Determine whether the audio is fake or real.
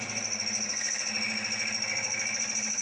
real